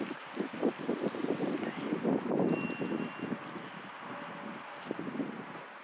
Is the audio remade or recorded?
recorded